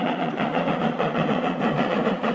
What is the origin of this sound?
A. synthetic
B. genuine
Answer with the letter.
A